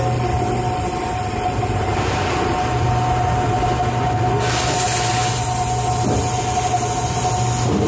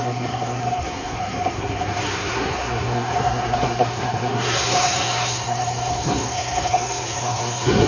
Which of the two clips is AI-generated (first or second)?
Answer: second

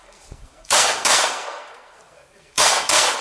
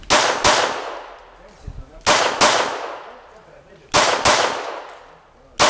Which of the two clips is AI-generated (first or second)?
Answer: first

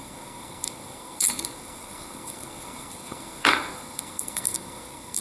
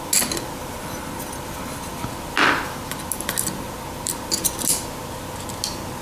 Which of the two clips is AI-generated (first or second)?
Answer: first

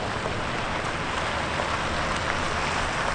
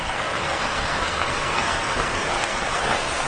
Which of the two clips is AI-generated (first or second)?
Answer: second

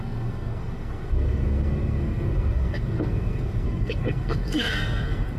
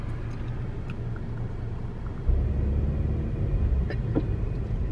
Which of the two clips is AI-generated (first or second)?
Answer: first